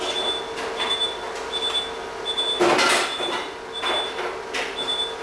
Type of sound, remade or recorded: recorded